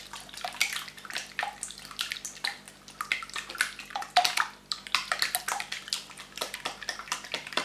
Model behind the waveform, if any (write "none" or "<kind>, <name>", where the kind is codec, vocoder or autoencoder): none